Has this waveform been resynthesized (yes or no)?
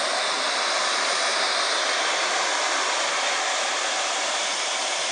yes